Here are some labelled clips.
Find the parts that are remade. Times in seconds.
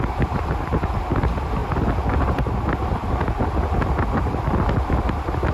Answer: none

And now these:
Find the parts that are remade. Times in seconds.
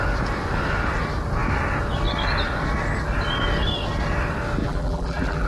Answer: 4.6-5.5 (vocoder, BigVGAN v2)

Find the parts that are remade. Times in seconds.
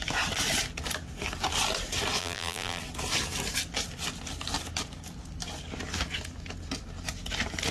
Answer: 2.2-2.8 (vocoder, BigVGAN v2)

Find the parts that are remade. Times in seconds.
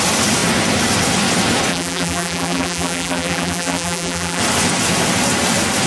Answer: 1.7-4.4 (vocoder, BigVGAN v2)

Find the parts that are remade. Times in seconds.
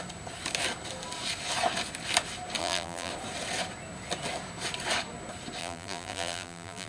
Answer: 2.6-3.1 (vocoder, BigVGAN v2); 5.6-6.9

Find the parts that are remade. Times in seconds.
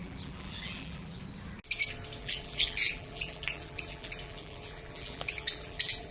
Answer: 0.0-1.2 (vocoder, BigVGAN v2); 2.2-6.1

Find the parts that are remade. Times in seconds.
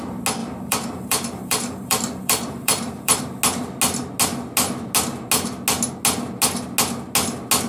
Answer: 0.4-3.2 (vocoder, BigVGAN v2)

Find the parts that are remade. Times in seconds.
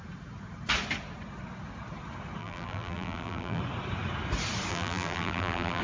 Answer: 2.4-3.6 (vocoder, BigVGAN v2); 4.7-5.8